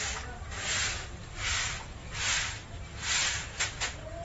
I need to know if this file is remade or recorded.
recorded